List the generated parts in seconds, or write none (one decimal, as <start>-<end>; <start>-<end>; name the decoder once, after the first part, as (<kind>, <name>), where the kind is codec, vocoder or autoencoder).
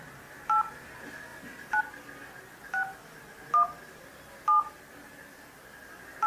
none